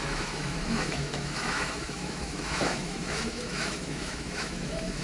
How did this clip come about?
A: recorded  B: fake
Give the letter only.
B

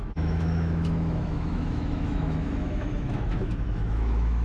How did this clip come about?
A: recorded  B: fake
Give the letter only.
B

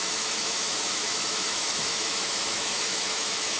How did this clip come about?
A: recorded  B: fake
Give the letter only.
B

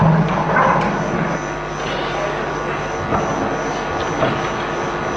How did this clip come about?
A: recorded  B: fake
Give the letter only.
A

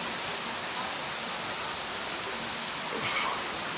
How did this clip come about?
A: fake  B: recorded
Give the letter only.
B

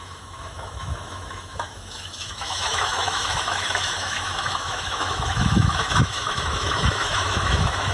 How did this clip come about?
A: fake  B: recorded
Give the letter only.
A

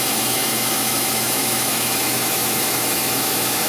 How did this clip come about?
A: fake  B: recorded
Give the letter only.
A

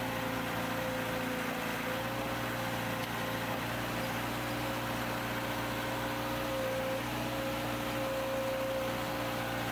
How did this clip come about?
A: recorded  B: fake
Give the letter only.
A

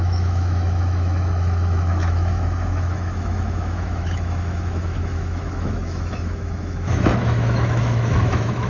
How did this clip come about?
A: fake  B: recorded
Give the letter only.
A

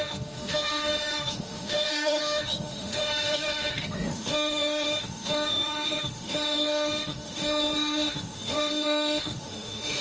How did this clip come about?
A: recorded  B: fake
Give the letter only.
B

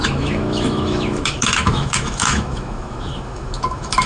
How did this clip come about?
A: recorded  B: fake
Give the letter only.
B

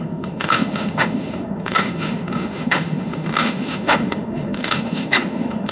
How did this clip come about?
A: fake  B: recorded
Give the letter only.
A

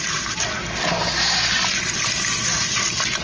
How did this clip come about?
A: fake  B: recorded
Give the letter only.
B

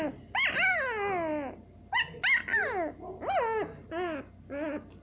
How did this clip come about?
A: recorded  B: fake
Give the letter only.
A